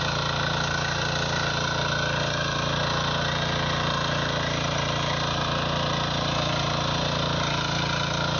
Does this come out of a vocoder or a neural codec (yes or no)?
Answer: no